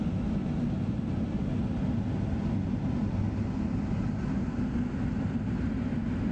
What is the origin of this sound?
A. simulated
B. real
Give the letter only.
B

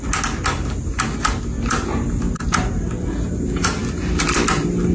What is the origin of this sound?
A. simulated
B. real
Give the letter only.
B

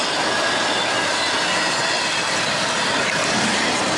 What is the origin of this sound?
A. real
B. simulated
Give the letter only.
A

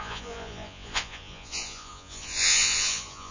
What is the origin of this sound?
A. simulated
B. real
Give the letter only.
A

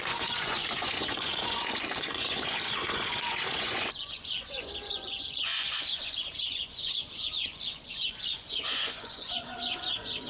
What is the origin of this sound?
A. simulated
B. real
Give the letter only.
A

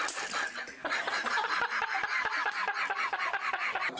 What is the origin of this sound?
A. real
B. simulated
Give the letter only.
A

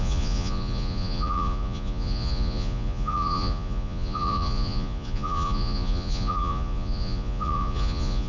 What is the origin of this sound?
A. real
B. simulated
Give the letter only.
B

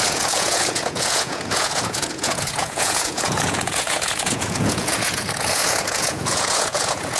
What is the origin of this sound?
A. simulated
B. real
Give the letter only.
A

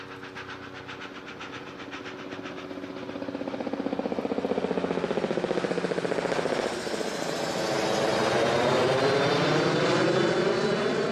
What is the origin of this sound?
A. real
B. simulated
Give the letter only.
A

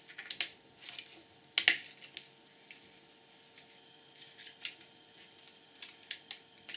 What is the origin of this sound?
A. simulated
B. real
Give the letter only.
B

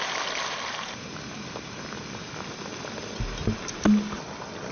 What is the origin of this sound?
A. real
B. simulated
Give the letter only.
A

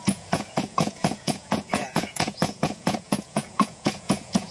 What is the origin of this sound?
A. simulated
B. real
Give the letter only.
A